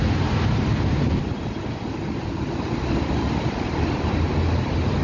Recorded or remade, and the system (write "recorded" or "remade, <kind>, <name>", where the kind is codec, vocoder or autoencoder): recorded